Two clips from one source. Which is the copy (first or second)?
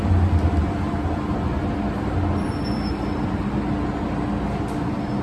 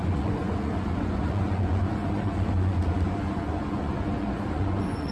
second